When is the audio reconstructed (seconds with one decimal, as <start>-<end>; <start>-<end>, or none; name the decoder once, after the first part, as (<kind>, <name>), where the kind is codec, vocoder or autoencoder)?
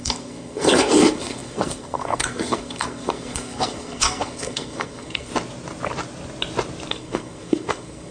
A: 0.0-5.3 (codec, SNAC); 6.9-8.1